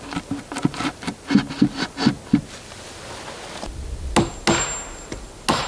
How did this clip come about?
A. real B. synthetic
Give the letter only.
A